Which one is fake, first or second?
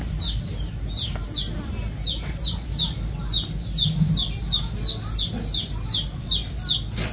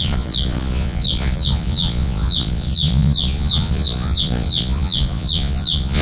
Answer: second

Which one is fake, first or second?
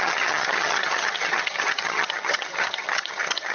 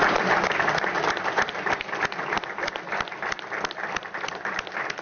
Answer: first